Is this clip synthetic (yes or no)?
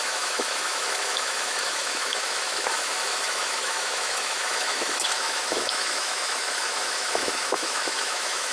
yes